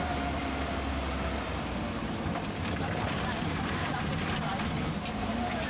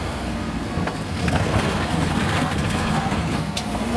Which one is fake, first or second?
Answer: second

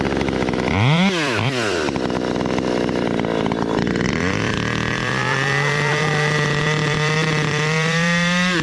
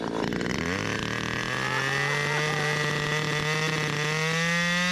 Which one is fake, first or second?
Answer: first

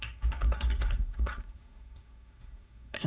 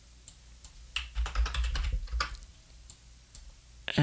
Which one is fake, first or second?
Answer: first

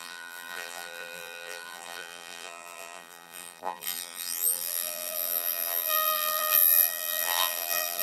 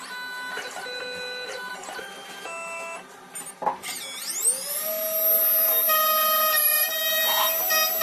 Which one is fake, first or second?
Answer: first